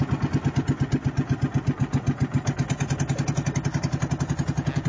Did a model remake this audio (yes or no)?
no